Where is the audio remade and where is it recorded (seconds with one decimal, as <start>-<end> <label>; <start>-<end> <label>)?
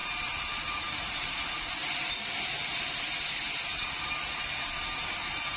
0.0-1.8 remade; 1.8-4.0 recorded; 4.0-5.6 remade